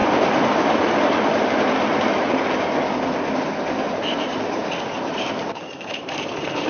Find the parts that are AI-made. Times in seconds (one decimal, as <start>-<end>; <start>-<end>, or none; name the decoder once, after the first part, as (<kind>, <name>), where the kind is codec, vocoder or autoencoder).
3.8-4.6 (vocoder, BigVGAN v2); 5.1-6.7

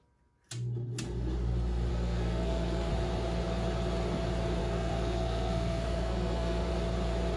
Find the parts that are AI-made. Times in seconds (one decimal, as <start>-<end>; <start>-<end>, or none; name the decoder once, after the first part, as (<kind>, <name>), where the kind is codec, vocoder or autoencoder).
1.9-2.9 (codec, SNAC); 4.6-6.7

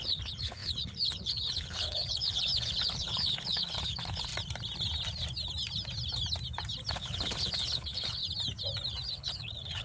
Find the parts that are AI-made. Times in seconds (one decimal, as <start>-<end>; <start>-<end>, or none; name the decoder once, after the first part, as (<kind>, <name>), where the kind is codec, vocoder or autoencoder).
0.0-4.3 (codec, HILCodec); 6.9-8.2; 9.1-9.8

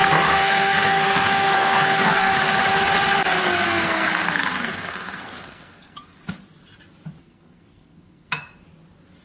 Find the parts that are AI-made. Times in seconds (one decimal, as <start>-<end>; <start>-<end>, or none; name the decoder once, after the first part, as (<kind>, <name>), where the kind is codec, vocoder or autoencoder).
0.0-2.3 (codec, SNAC); 3.4-6.2; 7.2-8.4

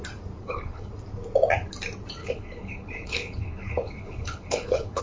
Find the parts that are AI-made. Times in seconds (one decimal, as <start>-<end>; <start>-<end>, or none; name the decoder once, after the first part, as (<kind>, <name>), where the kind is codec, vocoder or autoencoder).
0.4-0.9 (codec, HILCodec); 2.2-5.0

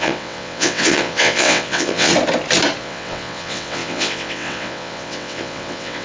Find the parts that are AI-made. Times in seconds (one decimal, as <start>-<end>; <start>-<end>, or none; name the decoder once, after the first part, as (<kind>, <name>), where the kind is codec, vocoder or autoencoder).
0.0-2.1 (vocoder, WaveNeXt); 2.8-6.0

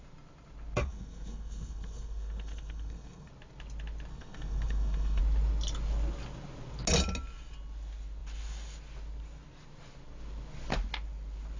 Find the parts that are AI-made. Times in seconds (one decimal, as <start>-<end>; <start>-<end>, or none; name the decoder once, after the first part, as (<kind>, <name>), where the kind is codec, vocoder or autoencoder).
0.8-3.3 (codec, SNAC); 4.1-5.2

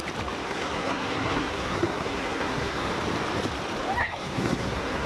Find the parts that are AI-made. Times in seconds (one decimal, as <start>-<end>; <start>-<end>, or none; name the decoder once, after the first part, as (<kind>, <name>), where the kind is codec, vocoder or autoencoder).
0.4-2.9 (codec, SNAC); 4.0-5.1